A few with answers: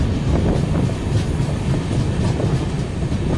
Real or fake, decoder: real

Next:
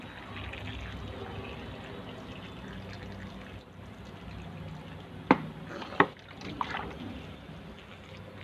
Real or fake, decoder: real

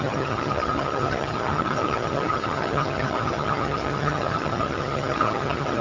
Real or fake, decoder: fake, vocoder, HiFi-GAN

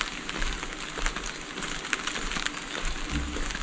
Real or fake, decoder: real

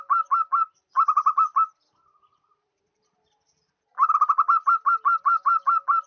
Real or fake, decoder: real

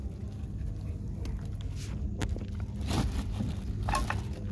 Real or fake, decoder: real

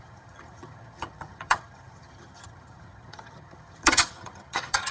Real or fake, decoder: fake, vocoder, HiFi-GAN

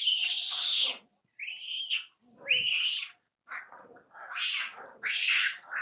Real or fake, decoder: real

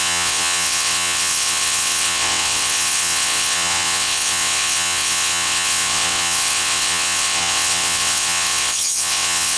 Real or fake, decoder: fake, vocoder, WaveNeXt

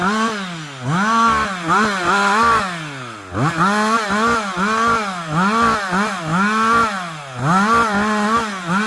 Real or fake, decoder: real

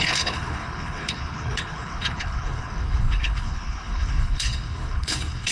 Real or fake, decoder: fake, codec, HILCodec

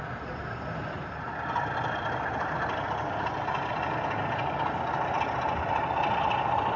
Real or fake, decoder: real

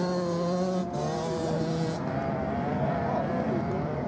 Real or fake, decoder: real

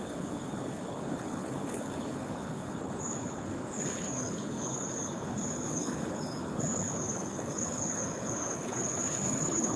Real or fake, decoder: fake, codec, HILCodec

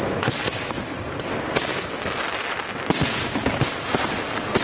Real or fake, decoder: real